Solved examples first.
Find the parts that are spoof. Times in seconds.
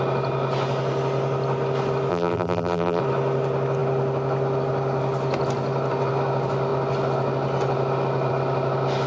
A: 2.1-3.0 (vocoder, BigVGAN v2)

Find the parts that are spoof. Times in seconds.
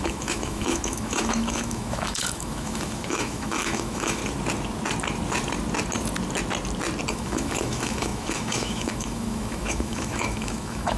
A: 0.0-4.2 (autoencoder, DAC-VAE); 7.1-11.0